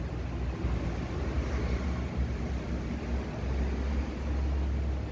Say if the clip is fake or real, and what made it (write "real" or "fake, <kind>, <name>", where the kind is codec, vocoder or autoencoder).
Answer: real